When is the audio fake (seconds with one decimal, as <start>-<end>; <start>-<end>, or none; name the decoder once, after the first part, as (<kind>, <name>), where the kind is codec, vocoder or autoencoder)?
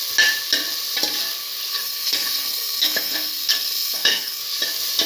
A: 1.7-4.4 (codec, SNAC)